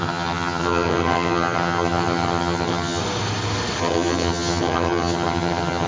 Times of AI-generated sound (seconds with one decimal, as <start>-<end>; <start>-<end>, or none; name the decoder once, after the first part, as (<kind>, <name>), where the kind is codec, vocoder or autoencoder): 0.0-3.0 (vocoder, HiFi-GAN); 3.8-5.9